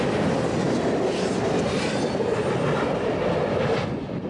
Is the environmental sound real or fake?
real